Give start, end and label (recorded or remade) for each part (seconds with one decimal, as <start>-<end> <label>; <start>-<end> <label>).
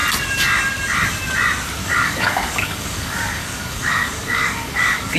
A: 0.0-1.8 recorded; 1.8-5.2 remade